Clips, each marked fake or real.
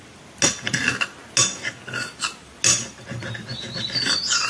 real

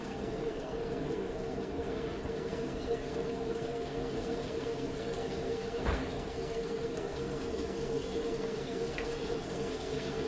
fake